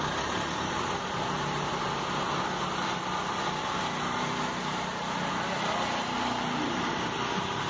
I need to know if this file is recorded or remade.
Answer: recorded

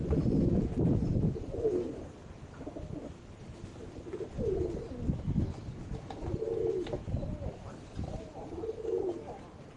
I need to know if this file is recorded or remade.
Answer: recorded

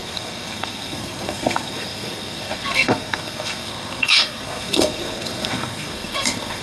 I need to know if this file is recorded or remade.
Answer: remade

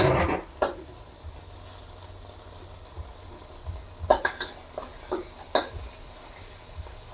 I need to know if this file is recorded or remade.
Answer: recorded